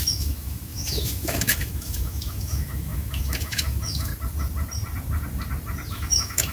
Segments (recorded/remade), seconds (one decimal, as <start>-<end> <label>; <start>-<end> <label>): 0.0-4.1 remade; 4.1-5.9 recorded; 5.9-6.5 remade